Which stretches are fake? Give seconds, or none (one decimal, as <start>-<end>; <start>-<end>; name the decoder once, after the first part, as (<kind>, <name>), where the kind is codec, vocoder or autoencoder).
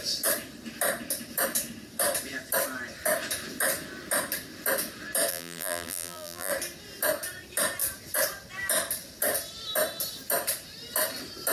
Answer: 5.3-6.5 (vocoder, BigVGAN v2)